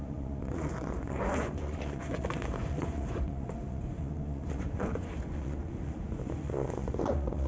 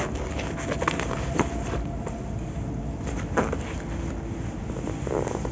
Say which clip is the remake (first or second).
first